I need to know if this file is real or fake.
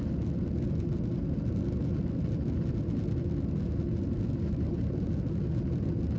real